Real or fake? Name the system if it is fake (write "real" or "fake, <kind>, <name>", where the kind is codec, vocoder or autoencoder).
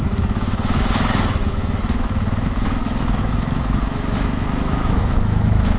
fake, autoencoder, DAC-VAE